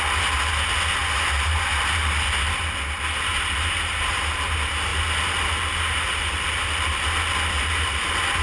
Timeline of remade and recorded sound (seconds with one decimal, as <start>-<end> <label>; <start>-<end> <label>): 0.0-8.4 recorded